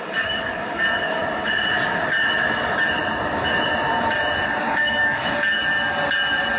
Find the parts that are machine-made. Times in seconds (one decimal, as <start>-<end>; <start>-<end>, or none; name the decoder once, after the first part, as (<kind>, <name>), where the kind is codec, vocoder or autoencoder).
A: 0.0-1.2 (codec, DAC); 4.6-5.6